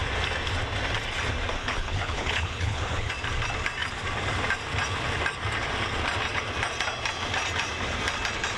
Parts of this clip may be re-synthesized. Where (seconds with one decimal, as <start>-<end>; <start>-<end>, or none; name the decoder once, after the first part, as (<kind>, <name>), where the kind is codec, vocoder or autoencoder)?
1.6-3.1 (codec, HILCodec)